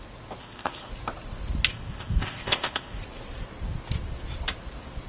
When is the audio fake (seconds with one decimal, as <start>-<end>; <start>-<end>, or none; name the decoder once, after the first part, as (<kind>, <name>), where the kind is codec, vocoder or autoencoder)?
0.4-0.9 (codec, ZipCodec); 1.7-3.0